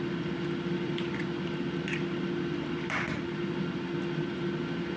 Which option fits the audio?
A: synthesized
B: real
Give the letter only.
B